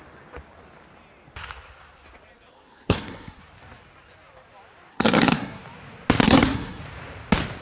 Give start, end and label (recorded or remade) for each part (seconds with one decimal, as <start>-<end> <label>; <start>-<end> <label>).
0.0-2.5 recorded; 2.5-3.4 remade; 3.4-4.9 recorded; 4.9-5.6 remade; 5.6-6.2 recorded; 6.2-6.8 remade; 6.8-7.6 recorded